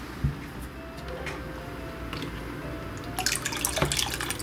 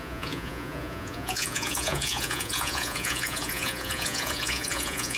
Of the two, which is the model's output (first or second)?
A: second